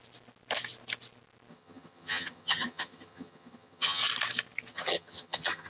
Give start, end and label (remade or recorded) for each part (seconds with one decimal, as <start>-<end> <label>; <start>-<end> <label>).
0.0-1.5 recorded; 1.5-4.0 remade; 4.0-4.7 recorded; 4.7-5.7 remade